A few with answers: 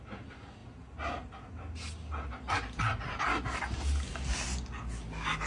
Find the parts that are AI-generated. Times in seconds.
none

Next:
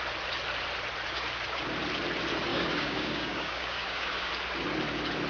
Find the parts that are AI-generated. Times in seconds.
2.5-4.3 (codec, DAC)

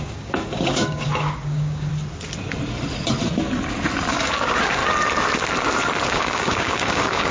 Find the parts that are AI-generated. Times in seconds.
0.0-1.9 (codec, DAC); 4.1-4.8; 6.1-7.3

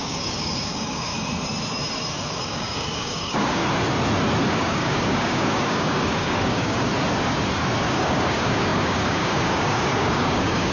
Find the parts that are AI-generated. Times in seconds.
0.0-1.1 (codec, DAC); 2.3-3.6; 4.5-6.9; 7.8-10.7

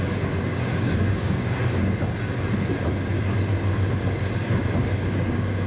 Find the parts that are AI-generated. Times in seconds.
0.0-1.6 (codec, DAC); 5.0-5.7